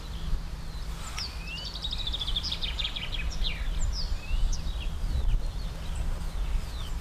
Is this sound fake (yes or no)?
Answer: no